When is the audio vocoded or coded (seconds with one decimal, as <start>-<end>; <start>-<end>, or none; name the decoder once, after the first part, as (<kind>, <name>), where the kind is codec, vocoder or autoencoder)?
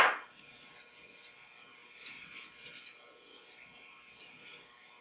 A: none